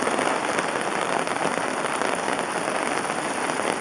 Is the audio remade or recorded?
recorded